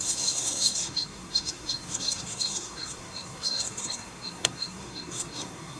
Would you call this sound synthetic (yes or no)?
yes